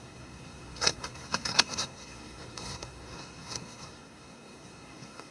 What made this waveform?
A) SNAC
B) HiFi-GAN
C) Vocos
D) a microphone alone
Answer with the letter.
A